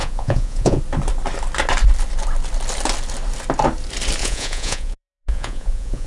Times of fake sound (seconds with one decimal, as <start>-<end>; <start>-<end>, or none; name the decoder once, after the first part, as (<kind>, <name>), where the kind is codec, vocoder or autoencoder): 0.0-0.8 (vocoder, Vocos); 4.2-6.1